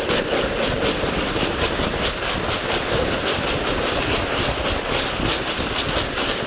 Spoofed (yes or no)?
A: no